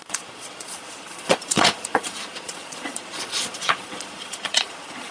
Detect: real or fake fake